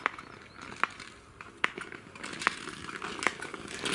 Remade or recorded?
recorded